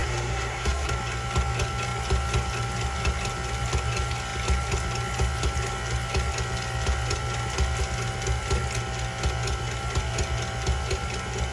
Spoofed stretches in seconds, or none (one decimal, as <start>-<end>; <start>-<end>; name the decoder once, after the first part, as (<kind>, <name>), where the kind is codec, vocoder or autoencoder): 0.0-0.9 (codec, SNAC)